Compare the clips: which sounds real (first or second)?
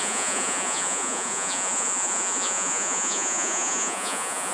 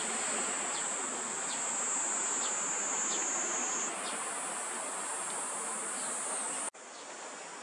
second